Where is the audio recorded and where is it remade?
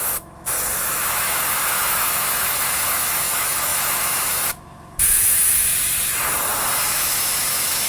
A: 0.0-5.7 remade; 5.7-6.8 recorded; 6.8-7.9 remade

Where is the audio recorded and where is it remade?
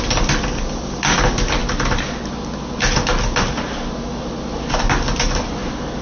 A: 0.0-6.0 recorded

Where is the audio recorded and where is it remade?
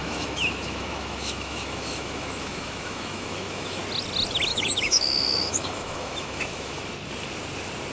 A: 0.0-3.8 remade; 3.8-4.5 recorded; 4.5-6.8 remade; 6.8-7.9 recorded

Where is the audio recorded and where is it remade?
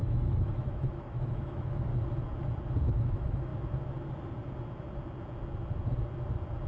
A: 0.0-1.9 remade; 1.9-2.9 recorded; 2.9-3.5 remade; 3.5-6.7 recorded